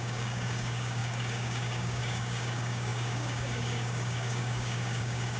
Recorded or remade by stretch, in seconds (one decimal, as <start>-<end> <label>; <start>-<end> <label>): 0.0-5.4 remade